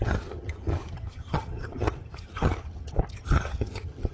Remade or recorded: remade